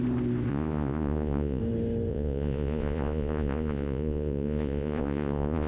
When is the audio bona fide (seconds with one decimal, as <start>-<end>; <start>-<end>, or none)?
0.0-0.5; 1.6-2.1